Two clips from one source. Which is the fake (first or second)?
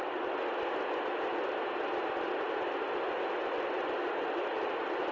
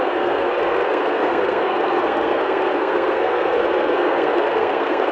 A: second